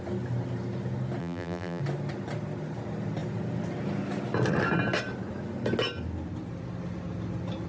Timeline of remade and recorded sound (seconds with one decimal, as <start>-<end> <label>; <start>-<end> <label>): 0.0-1.2 recorded; 1.2-1.8 remade; 1.8-7.7 recorded